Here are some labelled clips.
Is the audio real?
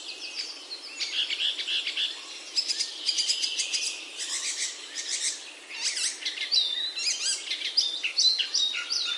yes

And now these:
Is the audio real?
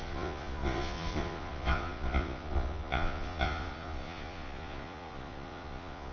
no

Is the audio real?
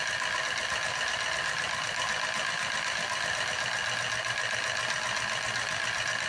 yes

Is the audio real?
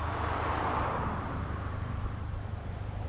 no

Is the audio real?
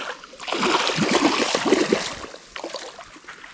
yes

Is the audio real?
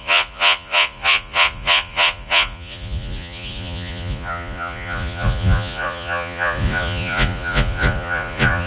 no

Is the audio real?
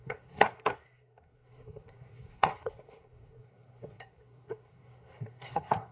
no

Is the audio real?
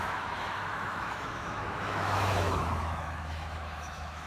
no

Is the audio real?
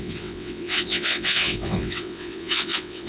no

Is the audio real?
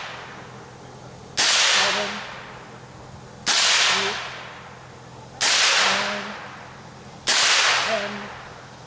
yes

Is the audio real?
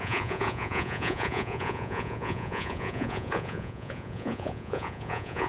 no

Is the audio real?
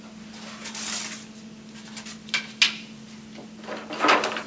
yes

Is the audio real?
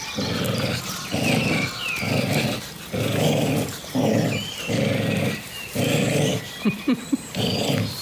yes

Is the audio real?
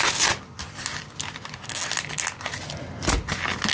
yes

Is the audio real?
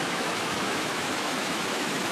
no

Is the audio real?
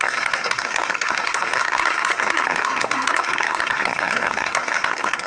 no